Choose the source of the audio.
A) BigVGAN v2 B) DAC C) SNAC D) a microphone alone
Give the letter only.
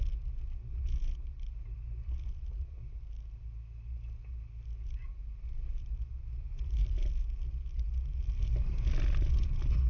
D